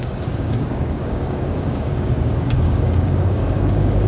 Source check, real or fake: fake